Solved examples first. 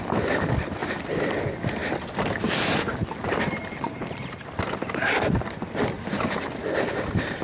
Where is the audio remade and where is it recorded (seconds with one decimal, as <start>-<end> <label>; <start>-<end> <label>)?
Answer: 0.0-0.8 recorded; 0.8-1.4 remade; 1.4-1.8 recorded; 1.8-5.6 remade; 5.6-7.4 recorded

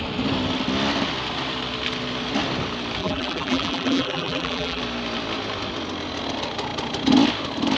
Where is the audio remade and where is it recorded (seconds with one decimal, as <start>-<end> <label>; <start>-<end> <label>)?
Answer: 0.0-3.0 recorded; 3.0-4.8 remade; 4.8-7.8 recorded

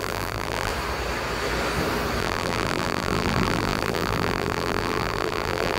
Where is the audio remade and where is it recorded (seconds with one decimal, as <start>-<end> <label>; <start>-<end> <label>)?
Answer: 0.0-0.7 remade; 0.7-2.2 recorded; 2.2-5.8 remade

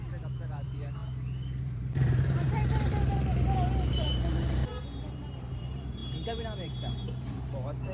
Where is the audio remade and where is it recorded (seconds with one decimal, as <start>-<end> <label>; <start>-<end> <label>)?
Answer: 0.0-1.0 remade; 1.0-1.6 recorded; 1.6-3.3 remade; 3.3-3.9 recorded; 3.9-7.9 remade

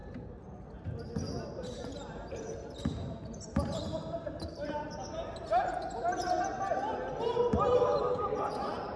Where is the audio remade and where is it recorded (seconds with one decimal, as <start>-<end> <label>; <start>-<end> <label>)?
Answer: 0.0-1.4 recorded; 1.4-5.1 remade; 5.1-7.7 recorded; 7.7-9.0 remade